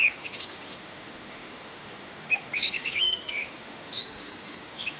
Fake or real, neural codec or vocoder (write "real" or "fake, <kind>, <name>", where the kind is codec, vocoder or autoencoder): fake, autoencoder, DAC-VAE